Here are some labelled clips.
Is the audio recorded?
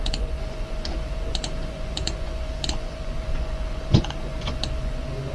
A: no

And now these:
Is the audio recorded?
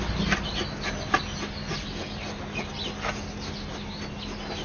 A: yes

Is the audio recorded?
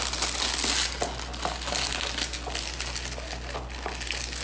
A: yes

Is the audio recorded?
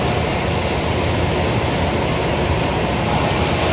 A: yes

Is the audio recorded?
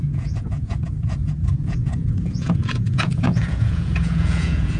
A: no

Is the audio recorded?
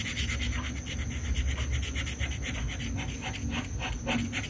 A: yes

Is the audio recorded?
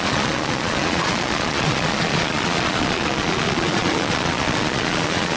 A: no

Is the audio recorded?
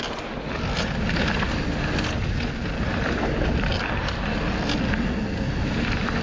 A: yes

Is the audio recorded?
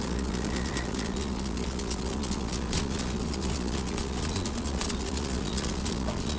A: no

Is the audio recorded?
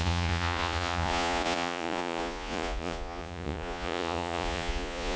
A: no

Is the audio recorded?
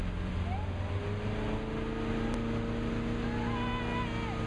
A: yes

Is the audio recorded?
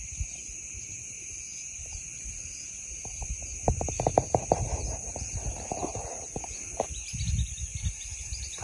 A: yes